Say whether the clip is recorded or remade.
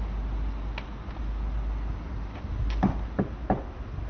recorded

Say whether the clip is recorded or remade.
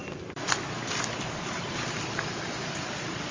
recorded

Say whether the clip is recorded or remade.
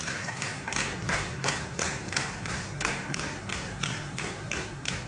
remade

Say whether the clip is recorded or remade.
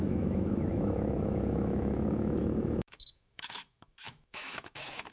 remade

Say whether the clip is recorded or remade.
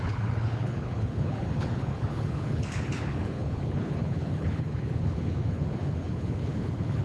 remade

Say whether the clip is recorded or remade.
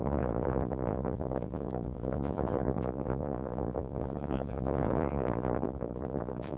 remade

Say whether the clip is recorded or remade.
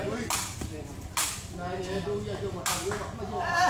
recorded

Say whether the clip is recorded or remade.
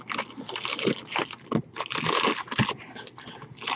recorded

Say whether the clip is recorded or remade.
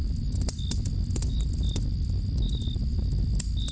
recorded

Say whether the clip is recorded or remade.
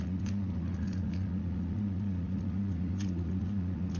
remade